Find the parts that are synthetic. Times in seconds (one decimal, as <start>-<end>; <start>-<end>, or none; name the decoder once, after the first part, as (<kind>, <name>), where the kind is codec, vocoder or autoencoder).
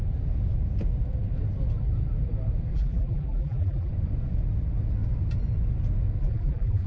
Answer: 2.7-3.9 (vocoder, BigVGAN v2); 6.2-6.9